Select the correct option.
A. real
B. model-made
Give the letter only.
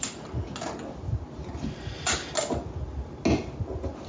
A